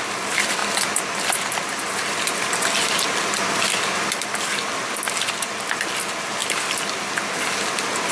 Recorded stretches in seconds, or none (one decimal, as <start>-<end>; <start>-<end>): 0.0-8.1